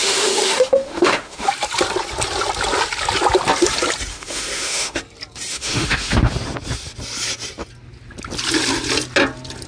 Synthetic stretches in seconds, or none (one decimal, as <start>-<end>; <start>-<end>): 0.0-1.5; 4.1-5.0; 5.5-6.3